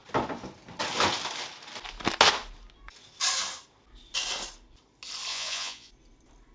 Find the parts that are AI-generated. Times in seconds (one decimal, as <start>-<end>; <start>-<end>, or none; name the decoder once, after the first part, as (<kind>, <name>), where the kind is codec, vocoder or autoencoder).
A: 5.3-5.9 (vocoder, Vocos)